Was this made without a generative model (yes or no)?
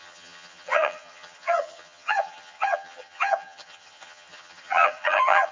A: no